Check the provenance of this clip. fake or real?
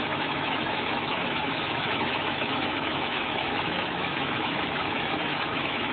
fake